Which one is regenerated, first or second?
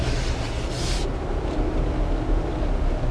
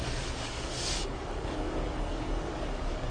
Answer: second